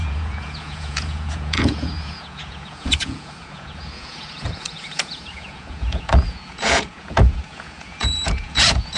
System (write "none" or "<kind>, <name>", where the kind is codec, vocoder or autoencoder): vocoder, Vocos